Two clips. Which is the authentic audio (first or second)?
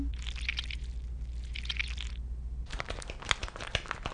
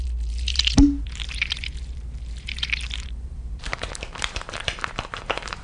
first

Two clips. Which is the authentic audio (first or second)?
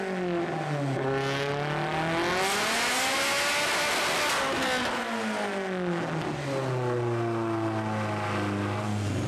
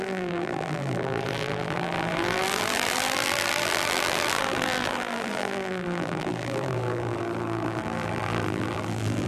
first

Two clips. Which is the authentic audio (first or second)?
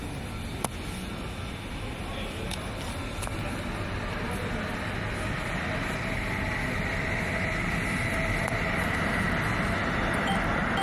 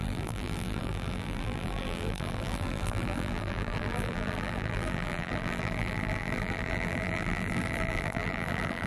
first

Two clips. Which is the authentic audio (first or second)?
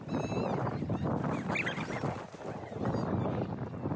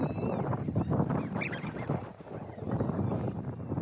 first